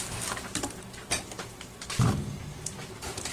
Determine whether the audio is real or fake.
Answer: fake